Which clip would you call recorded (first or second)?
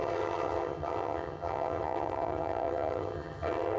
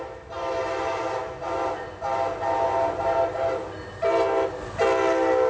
second